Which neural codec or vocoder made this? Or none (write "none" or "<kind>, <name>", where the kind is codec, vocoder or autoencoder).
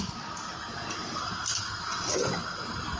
none